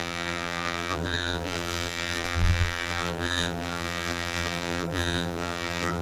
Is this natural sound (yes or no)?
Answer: no